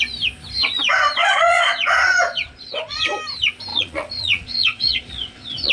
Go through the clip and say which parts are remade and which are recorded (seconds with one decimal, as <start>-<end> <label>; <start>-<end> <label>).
0.0-1.2 recorded; 1.2-3.1 remade; 3.1-3.7 recorded; 3.7-5.7 remade